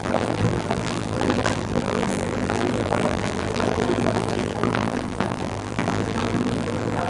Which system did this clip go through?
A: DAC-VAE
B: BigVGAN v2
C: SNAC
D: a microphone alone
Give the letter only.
B